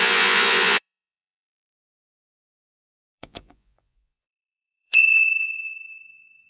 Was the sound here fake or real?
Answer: fake